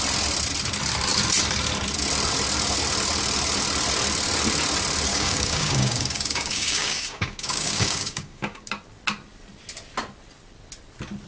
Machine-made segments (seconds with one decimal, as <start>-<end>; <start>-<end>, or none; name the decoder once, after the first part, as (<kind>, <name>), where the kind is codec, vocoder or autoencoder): 5.1-8.7 (codec, DAC)